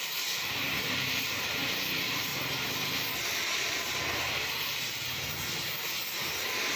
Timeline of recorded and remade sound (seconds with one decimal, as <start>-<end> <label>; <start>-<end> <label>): 0.0-2.3 remade; 2.3-6.1 recorded; 6.1-6.8 remade